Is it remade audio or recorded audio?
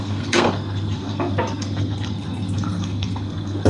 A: remade